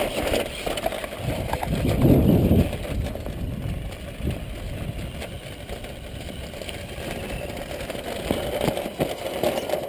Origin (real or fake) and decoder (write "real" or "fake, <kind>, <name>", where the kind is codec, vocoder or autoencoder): fake, vocoder, BigVGAN v2